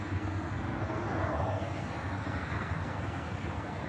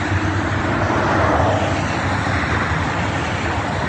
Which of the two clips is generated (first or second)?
first